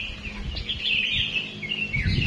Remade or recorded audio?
recorded